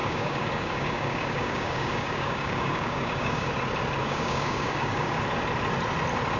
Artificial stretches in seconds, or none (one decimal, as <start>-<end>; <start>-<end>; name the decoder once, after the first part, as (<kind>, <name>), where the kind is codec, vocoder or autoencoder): 0.0-3.5 (codec, DAC); 4.0-5.2